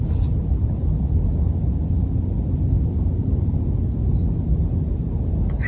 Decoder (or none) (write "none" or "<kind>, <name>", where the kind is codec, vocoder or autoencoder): none